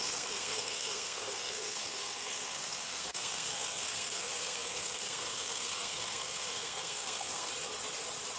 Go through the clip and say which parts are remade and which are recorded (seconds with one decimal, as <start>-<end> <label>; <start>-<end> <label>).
0.0-7.5 remade; 7.5-8.4 recorded